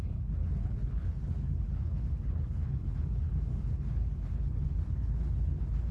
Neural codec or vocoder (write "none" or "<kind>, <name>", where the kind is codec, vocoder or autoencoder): codec, HILCodec